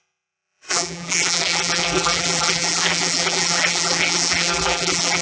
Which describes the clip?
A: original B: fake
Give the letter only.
B